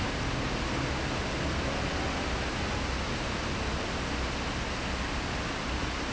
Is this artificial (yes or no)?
no